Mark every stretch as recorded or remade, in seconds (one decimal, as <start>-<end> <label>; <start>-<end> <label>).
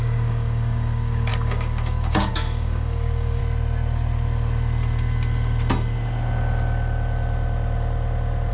0.0-3.4 remade; 3.4-8.5 recorded